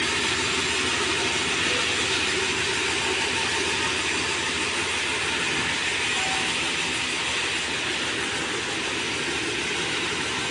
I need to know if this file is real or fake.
real